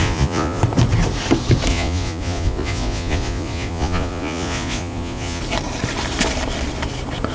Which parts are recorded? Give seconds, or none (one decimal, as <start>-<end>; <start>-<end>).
0.6-1.7; 5.4-7.3